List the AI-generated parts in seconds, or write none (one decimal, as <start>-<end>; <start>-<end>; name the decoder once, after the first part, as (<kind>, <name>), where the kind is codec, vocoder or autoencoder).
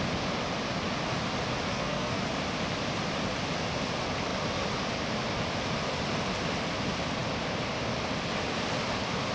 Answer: 1.7-2.2 (codec, SNAC)